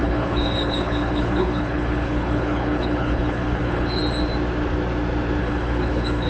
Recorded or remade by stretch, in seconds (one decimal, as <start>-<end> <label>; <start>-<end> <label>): 0.0-4.0 remade; 4.0-5.4 recorded; 5.4-6.3 remade